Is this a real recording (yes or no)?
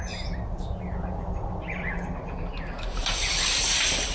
yes